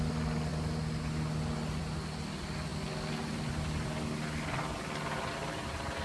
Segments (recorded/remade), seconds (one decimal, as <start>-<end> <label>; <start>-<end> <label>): 0.0-6.0 recorded